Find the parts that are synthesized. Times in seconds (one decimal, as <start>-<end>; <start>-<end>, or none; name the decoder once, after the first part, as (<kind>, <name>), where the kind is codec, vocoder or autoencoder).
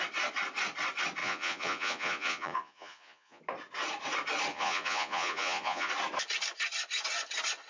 1.2-3.4 (vocoder, Vocos); 4.5-5.9